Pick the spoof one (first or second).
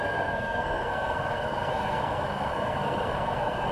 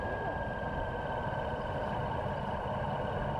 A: first